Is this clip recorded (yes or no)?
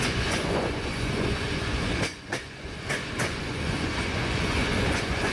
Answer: no